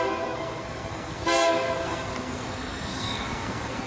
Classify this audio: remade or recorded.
remade